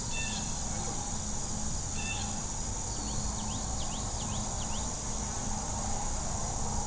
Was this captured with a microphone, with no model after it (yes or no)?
yes